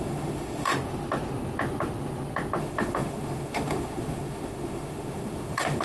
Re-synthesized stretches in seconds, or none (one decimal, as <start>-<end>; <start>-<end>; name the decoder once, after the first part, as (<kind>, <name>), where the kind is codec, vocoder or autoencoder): 0.0-0.7 (autoencoder, DAC-VAE); 2.6-5.8